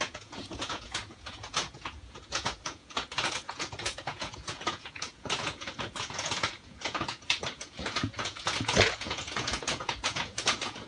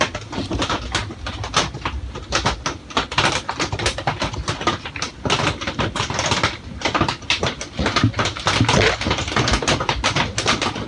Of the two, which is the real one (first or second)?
second